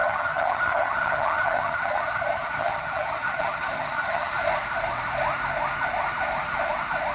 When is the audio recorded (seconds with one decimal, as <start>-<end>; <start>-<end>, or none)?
4.3-7.1